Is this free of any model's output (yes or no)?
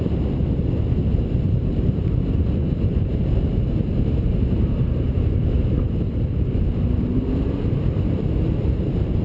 no